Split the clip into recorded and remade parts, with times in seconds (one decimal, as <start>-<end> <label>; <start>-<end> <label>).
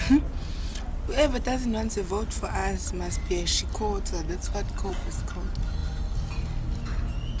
0.0-7.4 recorded